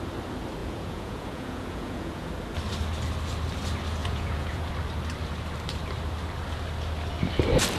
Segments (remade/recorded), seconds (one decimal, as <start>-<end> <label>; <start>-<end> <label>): 0.0-0.6 recorded; 0.6-2.3 remade; 2.3-4.0 recorded; 4.0-4.7 remade; 4.7-7.8 recorded